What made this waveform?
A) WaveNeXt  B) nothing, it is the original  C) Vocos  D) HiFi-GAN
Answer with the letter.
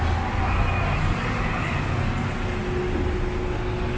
B